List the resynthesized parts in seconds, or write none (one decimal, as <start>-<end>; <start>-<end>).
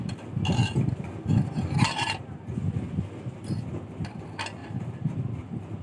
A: 4.6-5.2